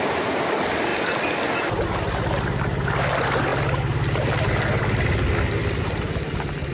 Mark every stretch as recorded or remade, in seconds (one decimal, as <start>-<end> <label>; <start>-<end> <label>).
0.0-6.7 recorded